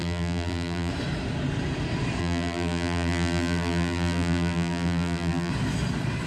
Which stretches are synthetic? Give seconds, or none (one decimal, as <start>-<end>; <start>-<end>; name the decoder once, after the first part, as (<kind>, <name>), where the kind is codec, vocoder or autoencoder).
0.0-0.9 (vocoder, BigVGAN v2); 2.2-5.5

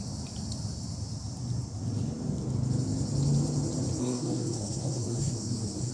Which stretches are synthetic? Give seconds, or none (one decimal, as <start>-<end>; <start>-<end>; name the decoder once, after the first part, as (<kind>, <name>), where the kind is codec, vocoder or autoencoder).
4.0-5.9 (codec, SNAC)